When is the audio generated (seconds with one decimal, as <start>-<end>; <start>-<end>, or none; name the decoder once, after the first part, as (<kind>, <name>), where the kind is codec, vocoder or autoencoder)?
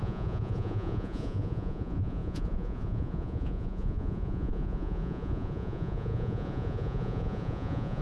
0.0-8.0 (vocoder, Vocos)